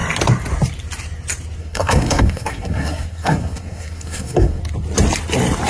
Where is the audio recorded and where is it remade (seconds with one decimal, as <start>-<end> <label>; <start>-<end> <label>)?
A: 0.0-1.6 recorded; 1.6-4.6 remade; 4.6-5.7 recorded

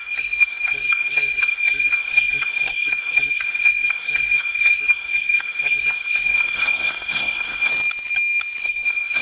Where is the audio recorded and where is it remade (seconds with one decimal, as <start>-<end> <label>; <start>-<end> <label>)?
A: 0.0-7.7 remade; 7.7-8.6 recorded; 8.6-9.2 remade

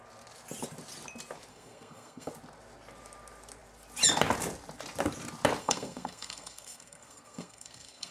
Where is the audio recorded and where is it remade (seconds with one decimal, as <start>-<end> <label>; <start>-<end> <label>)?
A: 0.0-1.5 recorded; 1.5-2.3 remade; 2.3-5.6 recorded; 5.6-8.1 remade

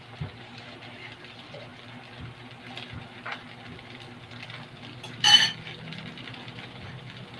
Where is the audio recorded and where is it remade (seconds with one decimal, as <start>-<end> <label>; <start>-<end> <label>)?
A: 0.0-7.4 recorded

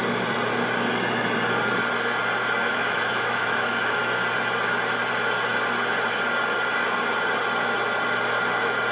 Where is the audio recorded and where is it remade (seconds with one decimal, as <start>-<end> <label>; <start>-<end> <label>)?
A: 0.0-2.6 recorded; 2.6-4.0 remade; 4.0-8.9 recorded

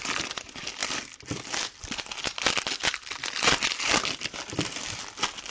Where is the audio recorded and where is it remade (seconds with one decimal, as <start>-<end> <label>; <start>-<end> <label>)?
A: 0.0-5.5 recorded

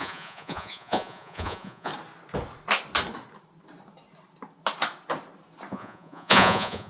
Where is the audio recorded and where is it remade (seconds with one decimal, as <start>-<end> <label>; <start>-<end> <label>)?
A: 0.0-1.9 remade; 1.9-5.7 recorded; 5.7-6.9 remade